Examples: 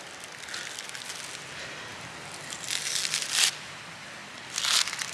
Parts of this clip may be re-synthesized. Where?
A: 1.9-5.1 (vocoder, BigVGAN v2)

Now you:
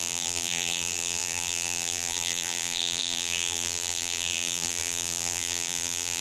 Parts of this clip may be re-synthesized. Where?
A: 0.0-6.2 (vocoder, BigVGAN v2)

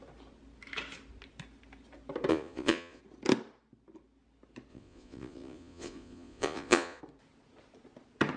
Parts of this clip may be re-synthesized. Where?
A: 2.3-3.0 (vocoder, Vocos); 4.7-7.0

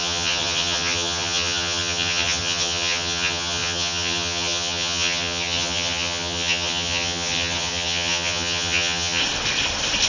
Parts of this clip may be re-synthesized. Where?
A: 0.0-9.2 (vocoder, HiFi-GAN)

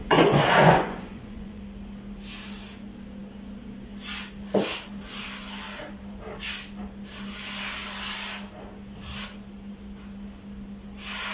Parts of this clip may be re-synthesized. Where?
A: 0.0-1.6 (vocoder, Vocos)

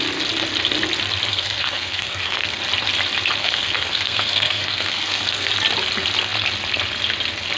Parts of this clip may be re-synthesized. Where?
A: 1.3-2.6 (codec, SNAC); 3.4-5.5

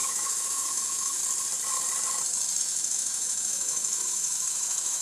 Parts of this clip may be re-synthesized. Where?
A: 0.0-1.2 (autoencoder, DAC-VAE); 2.6-5.0

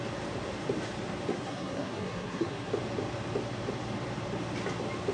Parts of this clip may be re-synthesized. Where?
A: 1.3-2.7 (codec, SNAC)